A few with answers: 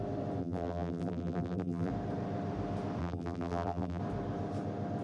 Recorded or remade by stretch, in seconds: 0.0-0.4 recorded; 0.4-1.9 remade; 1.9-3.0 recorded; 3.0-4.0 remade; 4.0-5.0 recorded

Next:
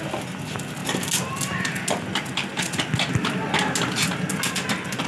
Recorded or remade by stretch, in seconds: 0.0-5.1 recorded

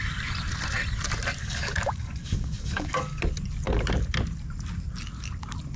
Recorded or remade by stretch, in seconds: 0.0-1.4 recorded; 1.4-3.2 remade; 3.2-5.8 recorded

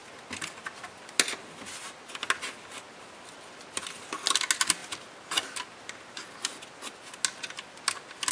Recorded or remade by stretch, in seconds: 0.0-8.3 recorded

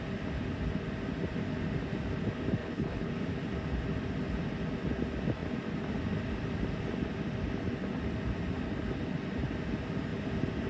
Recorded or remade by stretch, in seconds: 0.0-2.6 recorded; 2.6-3.1 remade; 3.1-10.7 recorded

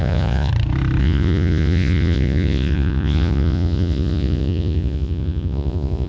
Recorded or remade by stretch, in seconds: 0.0-0.5 remade; 0.5-1.0 recorded; 1.0-6.1 remade